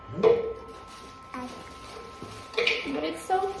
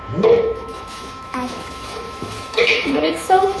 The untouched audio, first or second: first